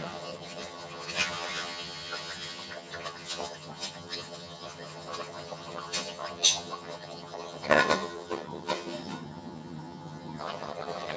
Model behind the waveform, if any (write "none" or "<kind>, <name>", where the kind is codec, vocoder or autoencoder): vocoder, HiFi-GAN